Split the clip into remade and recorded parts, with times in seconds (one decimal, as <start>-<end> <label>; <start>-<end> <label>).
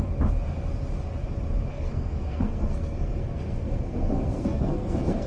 0.0-1.7 recorded; 1.7-5.3 remade